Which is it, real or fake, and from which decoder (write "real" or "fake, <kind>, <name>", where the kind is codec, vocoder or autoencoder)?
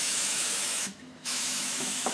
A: fake, autoencoder, DAC-VAE